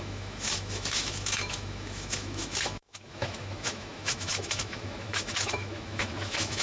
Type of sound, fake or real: fake